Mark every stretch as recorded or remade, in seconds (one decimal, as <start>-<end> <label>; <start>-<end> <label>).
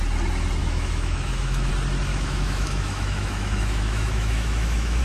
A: 0.0-0.6 recorded; 0.6-1.7 remade; 1.7-2.1 recorded; 2.1-5.0 remade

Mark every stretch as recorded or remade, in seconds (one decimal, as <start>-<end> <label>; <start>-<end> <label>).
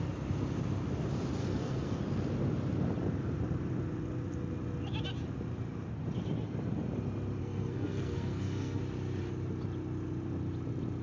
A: 0.0-1.4 recorded; 1.4-2.0 remade; 2.0-7.4 recorded; 7.4-8.8 remade; 8.8-11.0 recorded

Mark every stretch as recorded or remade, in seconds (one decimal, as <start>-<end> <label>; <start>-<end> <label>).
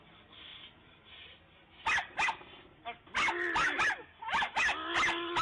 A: 0.0-5.4 recorded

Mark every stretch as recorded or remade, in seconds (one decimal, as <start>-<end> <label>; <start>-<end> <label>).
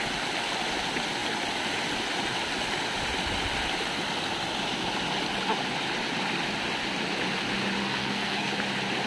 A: 0.0-7.8 recorded; 7.8-8.5 remade; 8.5-9.1 recorded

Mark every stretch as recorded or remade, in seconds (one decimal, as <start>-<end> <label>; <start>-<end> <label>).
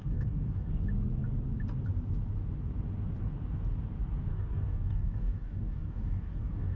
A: 0.0-0.7 remade; 0.7-4.3 recorded; 4.3-6.8 remade